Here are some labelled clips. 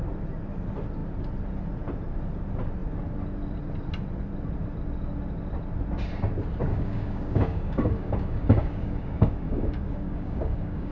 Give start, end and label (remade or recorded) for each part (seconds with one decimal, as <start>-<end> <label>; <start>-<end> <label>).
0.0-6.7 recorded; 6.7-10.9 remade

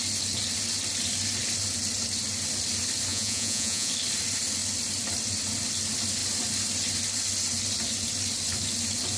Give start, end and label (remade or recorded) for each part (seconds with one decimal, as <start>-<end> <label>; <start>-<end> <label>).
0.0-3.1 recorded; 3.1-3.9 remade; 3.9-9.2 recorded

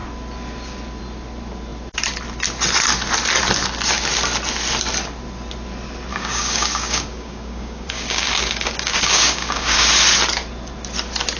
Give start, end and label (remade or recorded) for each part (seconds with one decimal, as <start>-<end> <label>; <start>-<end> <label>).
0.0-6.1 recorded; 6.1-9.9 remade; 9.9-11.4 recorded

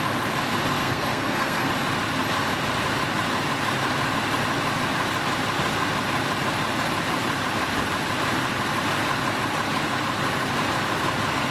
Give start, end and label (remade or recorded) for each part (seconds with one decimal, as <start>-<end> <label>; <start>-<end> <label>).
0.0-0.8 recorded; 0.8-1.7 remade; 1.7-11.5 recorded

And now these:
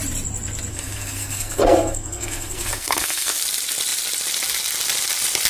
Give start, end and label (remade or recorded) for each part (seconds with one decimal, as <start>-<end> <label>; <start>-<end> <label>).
0.0-0.7 recorded; 0.7-3.4 remade; 3.4-5.5 recorded

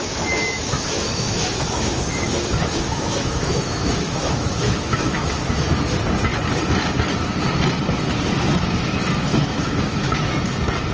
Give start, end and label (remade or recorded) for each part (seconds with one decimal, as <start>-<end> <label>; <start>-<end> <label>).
0.0-0.4 recorded; 0.4-5.4 remade; 5.4-9.3 recorded; 9.3-10.3 remade; 10.3-10.9 recorded